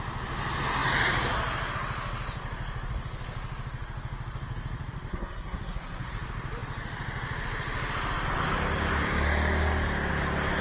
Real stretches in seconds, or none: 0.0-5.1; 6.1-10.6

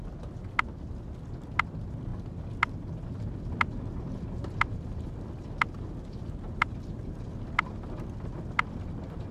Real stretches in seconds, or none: 0.0-9.3

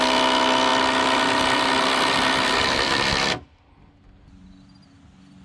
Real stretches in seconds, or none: 0.0-5.4

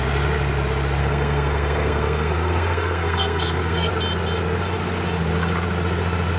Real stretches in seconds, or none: 0.0-1.0; 3.9-6.4

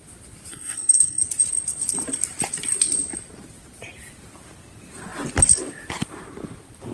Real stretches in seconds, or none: 0.0-0.5; 1.2-6.9

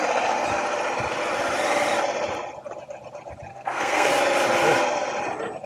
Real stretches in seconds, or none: 0.0-3.5; 4.1-5.7

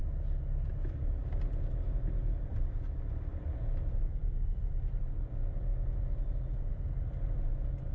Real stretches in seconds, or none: 0.0-7.9